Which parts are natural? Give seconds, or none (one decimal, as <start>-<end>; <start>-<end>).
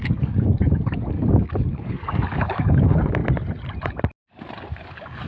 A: 3.2-4.8